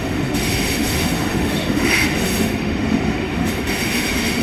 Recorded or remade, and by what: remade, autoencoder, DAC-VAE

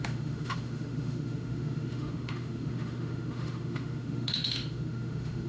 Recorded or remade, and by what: remade, autoencoder, DAC-VAE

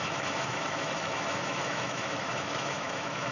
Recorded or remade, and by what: remade, autoencoder, DAC-VAE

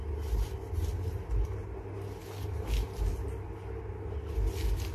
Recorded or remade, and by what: recorded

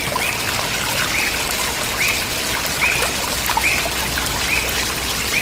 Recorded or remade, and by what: recorded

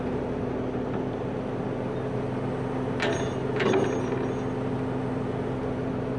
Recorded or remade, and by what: recorded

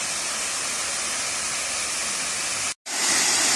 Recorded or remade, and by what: recorded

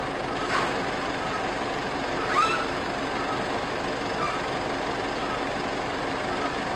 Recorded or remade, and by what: recorded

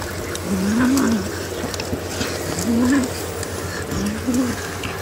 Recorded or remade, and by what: recorded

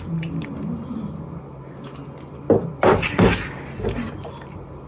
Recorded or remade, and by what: recorded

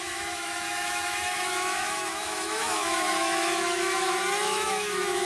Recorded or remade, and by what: remade, autoencoder, DAC-VAE